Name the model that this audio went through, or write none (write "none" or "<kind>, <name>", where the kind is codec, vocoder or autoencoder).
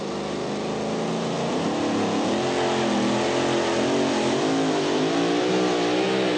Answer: none